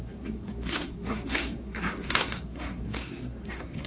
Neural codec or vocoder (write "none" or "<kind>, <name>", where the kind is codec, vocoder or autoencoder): codec, SNAC